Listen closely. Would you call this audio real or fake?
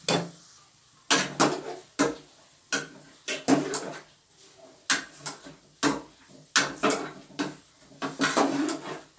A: real